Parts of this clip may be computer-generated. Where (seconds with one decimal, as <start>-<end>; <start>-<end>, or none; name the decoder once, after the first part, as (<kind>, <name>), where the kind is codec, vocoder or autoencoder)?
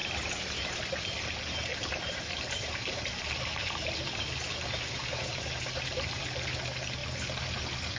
0.0-0.6 (vocoder, BigVGAN v2); 1.7-6.2